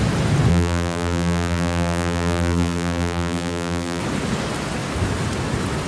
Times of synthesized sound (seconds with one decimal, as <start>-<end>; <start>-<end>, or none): 0.5-4.0